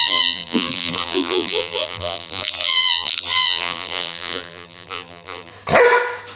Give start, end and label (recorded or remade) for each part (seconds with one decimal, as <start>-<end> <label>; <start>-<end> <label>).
0.0-5.5 remade; 5.5-6.4 recorded